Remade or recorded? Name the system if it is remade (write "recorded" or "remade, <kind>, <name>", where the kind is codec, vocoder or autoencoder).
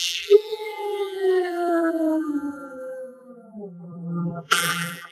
remade, vocoder, BigVGAN v2